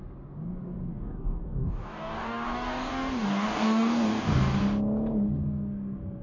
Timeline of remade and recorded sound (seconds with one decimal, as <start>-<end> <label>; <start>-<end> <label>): 0.0-0.9 recorded; 0.9-4.6 remade; 4.6-6.2 recorded

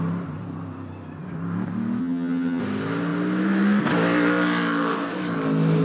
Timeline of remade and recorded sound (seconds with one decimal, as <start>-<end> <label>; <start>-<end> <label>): 0.0-2.0 recorded; 2.0-2.6 remade; 2.6-5.8 recorded

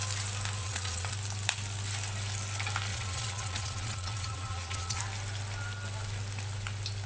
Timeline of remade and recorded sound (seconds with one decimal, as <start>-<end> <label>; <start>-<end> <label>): 0.0-0.6 recorded; 0.6-1.1 remade; 1.1-2.9 recorded; 2.9-5.0 remade; 5.0-7.1 recorded

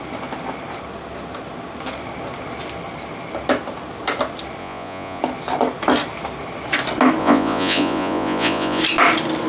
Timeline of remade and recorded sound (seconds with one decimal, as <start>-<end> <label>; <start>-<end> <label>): 0.0-4.6 recorded; 4.6-5.2 remade; 5.2-7.2 recorded; 7.2-8.8 remade; 8.8-9.5 recorded

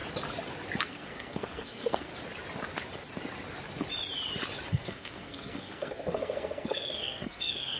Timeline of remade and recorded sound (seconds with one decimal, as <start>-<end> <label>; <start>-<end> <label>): 0.0-0.8 recorded; 0.8-2.1 remade; 2.1-4.7 recorded; 4.7-7.8 remade

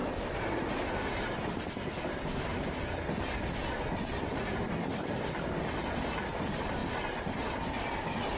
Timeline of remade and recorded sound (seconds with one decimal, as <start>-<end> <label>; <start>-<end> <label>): 0.0-2.0 recorded; 2.0-2.5 remade; 2.5-4.5 recorded; 4.5-6.8 remade; 6.8-7.8 recorded; 7.8-8.4 remade